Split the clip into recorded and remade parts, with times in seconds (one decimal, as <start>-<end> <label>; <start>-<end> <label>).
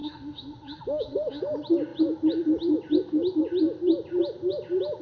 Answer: 0.0-1.4 remade; 1.4-5.0 recorded